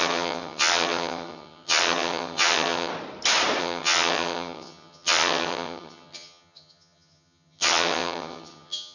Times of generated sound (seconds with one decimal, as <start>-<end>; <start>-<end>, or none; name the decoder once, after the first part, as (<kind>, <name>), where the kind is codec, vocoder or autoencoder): 0.0-2.9 (vocoder, HiFi-GAN); 3.6-8.9